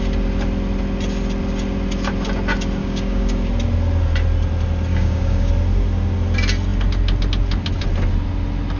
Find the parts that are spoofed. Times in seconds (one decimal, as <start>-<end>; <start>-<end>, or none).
2.8-3.5; 4.9-5.5